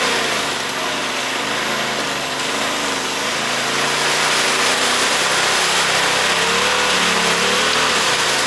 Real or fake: real